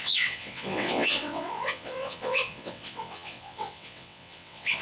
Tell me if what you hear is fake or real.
fake